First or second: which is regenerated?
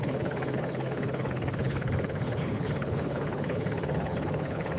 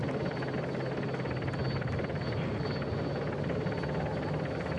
first